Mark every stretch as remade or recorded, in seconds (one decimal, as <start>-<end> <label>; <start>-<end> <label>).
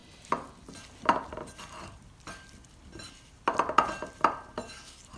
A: 0.0-5.2 recorded